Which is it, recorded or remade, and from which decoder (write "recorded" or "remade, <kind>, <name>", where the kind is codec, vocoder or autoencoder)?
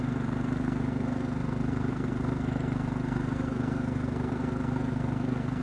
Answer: remade, codec, SNAC